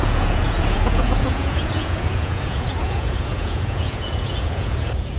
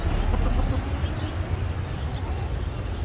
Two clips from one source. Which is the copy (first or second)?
first